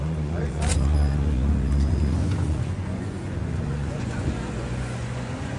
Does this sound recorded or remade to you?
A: remade